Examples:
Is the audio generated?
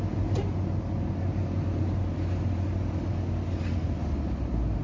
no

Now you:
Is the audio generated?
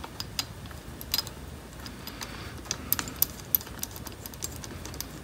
no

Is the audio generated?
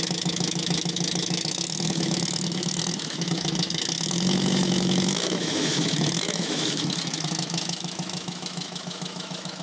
yes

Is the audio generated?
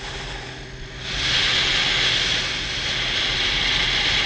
no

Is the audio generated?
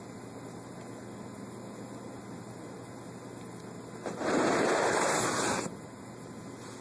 no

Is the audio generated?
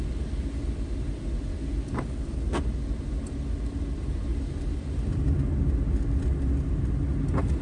no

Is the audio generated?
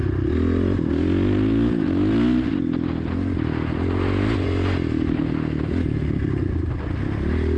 no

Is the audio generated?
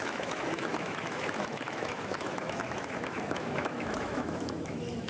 yes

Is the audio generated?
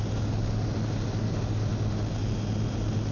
no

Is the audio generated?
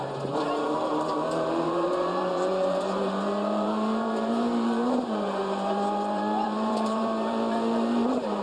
yes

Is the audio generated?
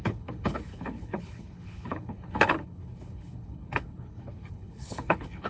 yes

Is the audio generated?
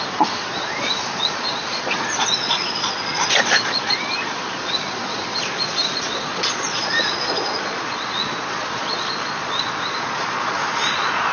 yes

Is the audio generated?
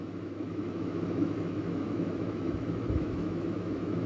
yes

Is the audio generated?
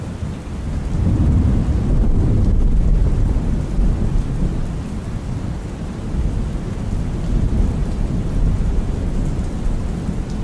no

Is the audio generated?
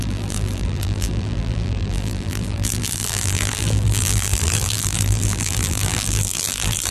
yes